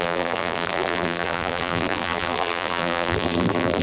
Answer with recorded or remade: remade